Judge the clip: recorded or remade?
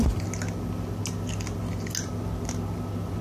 recorded